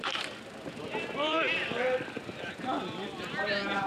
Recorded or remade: remade